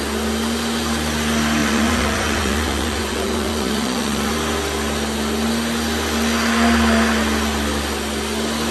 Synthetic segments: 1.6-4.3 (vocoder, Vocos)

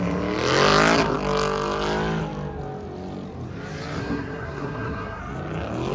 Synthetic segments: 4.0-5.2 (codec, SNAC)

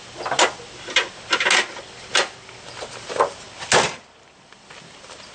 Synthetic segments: none

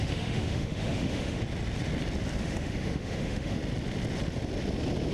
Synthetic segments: 0.0-1.4 (autoencoder, DAC-VAE); 2.4-3.6

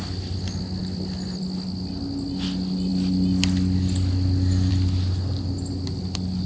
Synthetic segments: none

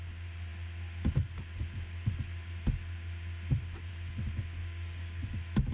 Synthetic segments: 4.6-5.2 (codec, DAC)